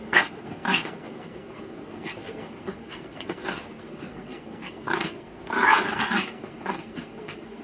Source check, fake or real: fake